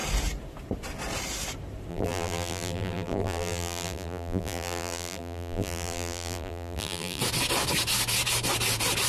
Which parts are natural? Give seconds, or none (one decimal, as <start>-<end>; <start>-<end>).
0.0-1.9; 7.2-9.1